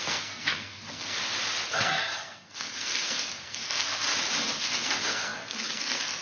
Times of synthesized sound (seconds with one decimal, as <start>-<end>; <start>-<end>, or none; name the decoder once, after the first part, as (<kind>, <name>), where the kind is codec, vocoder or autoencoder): 0.0-1.2 (codec, SNAC); 1.7-4.1; 4.6-6.2